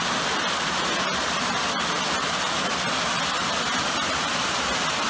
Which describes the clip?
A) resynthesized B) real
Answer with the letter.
B